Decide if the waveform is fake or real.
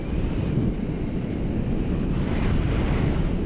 real